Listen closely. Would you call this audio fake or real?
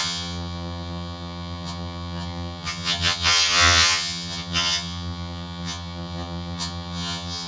fake